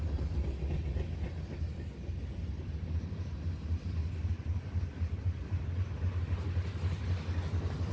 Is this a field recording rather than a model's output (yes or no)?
yes